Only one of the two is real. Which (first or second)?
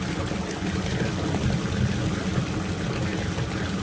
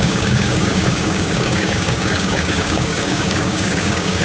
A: first